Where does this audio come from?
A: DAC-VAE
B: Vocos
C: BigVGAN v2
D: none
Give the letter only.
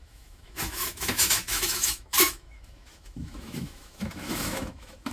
A